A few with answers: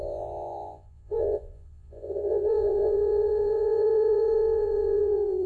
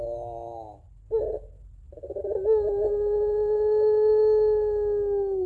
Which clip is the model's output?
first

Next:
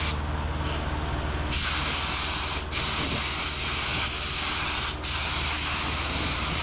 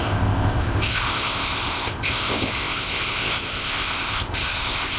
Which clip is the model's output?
second